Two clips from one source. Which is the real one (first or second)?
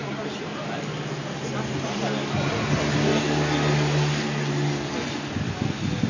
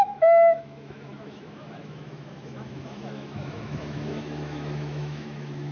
first